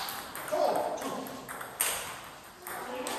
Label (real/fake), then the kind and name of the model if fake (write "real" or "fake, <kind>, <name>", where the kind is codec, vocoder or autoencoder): real